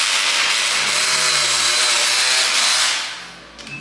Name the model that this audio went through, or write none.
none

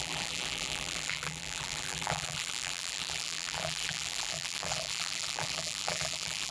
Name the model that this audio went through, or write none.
vocoder, BigVGAN v2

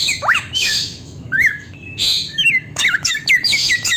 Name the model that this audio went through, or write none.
autoencoder, DAC-VAE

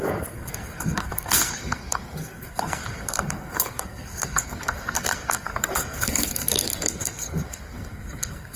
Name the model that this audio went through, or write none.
codec, SNAC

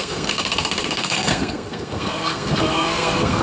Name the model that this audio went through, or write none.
codec, SNAC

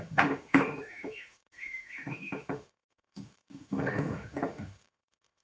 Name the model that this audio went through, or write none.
autoencoder, DAC-VAE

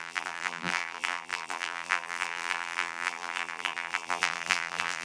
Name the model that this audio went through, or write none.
vocoder, BigVGAN v2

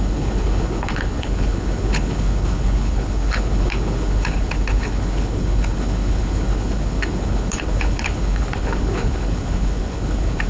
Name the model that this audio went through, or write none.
codec, HILCodec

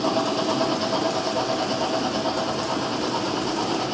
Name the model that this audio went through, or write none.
none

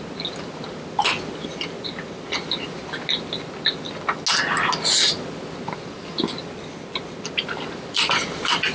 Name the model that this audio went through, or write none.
none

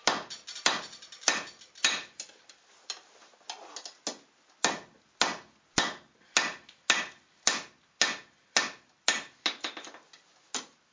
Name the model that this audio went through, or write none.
none